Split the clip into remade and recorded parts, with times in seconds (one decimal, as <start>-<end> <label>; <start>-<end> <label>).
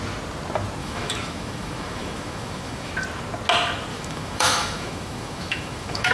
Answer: 0.0-0.8 recorded; 0.8-2.9 remade; 2.9-3.9 recorded; 3.9-6.1 remade